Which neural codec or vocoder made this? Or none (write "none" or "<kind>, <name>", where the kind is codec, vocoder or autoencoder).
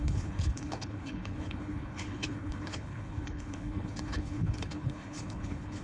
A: codec, HILCodec